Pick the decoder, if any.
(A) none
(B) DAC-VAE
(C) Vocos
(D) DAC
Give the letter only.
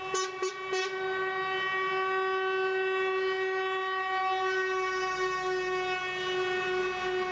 A